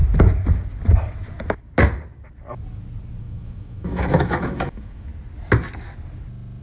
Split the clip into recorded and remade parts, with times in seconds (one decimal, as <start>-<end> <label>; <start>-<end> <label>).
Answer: 0.0-3.2 recorded; 3.2-5.1 remade; 5.1-6.6 recorded